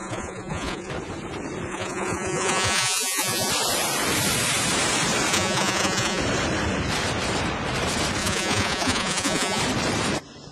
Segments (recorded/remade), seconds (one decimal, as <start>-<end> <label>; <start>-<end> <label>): 0.0-0.9 remade; 0.9-1.7 recorded; 1.7-3.5 remade; 3.5-5.3 recorded; 5.3-6.2 remade; 6.2-8.2 recorded; 8.2-9.6 remade; 9.6-10.5 recorded